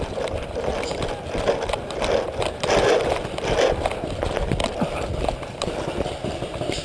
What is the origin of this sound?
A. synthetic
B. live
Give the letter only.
B